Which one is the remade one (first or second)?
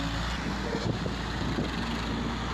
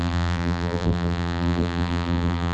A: second